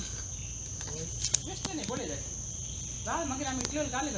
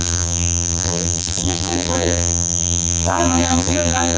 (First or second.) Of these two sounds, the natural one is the first